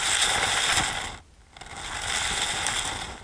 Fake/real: real